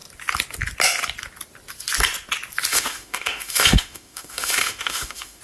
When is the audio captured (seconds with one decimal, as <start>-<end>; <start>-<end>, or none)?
0.0-2.7